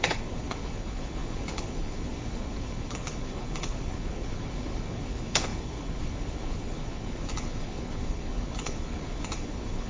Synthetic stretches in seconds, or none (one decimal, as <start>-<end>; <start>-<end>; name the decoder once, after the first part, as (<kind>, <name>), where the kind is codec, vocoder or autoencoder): 0.0-9.9 (codec, HILCodec)